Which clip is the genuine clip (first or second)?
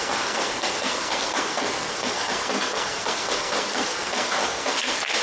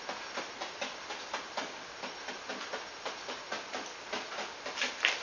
second